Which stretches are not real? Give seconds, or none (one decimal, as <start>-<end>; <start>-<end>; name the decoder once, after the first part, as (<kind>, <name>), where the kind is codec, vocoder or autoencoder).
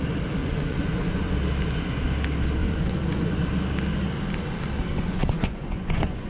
0.4-1.3 (vocoder, Vocos); 2.6-3.4; 4.9-6.3